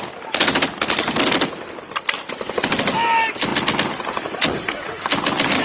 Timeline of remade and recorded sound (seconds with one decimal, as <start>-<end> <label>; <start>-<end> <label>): 0.0-5.6 recorded